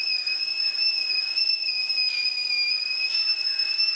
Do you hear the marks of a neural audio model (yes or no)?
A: no